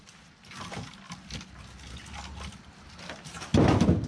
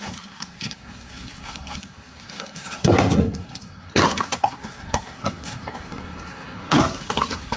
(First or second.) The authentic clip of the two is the first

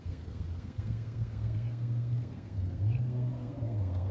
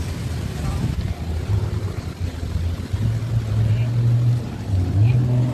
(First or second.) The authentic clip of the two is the second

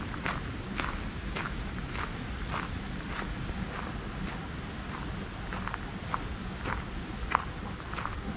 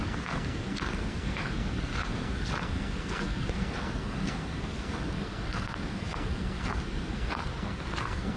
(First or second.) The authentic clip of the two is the first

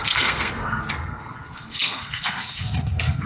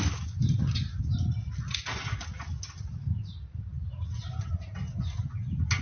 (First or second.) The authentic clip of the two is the second